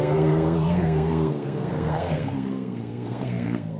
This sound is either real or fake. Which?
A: fake